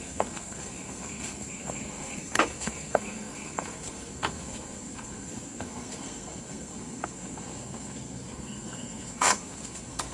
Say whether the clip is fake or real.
fake